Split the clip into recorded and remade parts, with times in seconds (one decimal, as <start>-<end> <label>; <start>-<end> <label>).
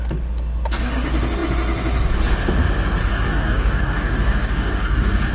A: 0.0-3.0 recorded; 3.0-5.3 remade